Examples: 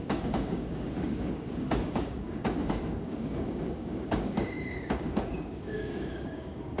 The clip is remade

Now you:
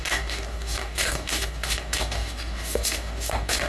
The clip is remade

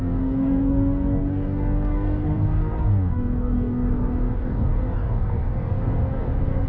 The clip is remade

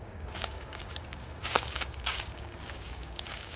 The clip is remade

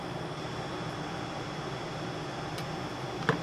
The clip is recorded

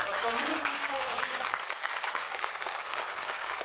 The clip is remade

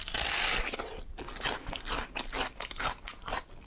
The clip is recorded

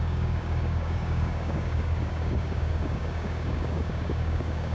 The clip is remade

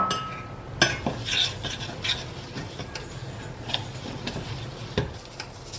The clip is recorded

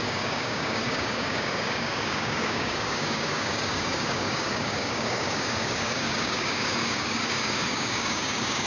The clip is remade